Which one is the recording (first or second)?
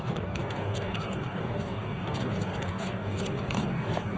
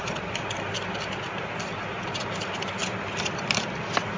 second